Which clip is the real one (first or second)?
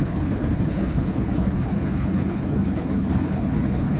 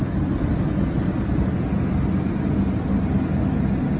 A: second